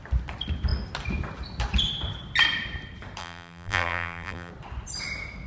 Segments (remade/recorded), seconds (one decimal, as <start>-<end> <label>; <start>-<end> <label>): 0.0-3.2 recorded; 3.2-4.5 remade; 4.5-5.5 recorded